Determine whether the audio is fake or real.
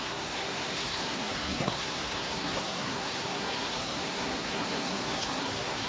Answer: fake